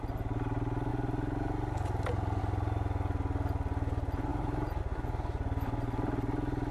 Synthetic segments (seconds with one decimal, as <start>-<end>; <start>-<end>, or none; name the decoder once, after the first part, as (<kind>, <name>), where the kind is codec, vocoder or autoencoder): 4.3-4.8 (vocoder, BigVGAN v2)